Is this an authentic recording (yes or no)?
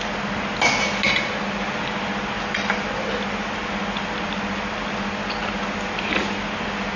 yes